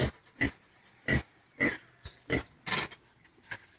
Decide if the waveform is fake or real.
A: real